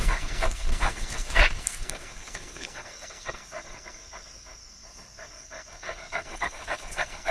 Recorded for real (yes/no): no